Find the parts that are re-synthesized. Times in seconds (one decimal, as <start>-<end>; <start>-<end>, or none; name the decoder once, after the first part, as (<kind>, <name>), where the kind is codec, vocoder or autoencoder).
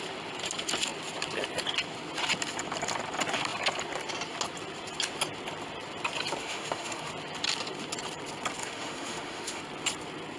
6.4-7.1 (autoencoder, DAC-VAE); 8.6-9.6